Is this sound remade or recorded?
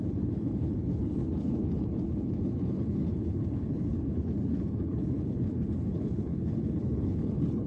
remade